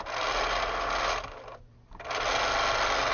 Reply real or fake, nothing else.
real